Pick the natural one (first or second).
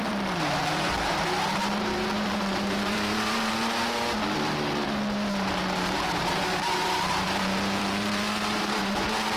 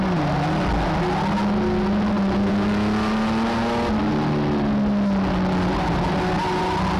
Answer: second